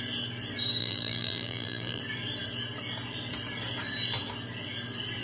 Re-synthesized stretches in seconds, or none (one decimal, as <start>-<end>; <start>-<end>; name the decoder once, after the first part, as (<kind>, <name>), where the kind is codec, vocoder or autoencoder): 0.8-2.0 (vocoder, BigVGAN v2)